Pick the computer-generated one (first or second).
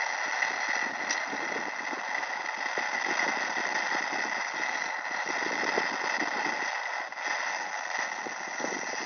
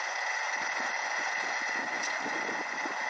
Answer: second